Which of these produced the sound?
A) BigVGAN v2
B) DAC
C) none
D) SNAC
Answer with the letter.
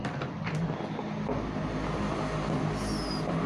C